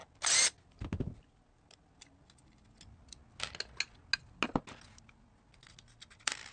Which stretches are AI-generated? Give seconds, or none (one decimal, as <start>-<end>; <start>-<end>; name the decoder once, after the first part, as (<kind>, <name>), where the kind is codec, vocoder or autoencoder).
none